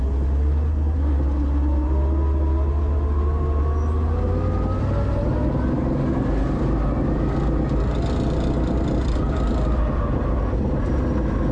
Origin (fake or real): real